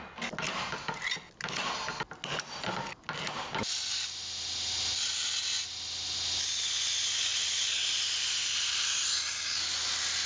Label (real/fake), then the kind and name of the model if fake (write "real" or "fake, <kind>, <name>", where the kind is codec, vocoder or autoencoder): real